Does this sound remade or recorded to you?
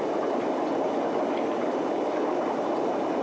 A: recorded